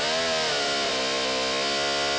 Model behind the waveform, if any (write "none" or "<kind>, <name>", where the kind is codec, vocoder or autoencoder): none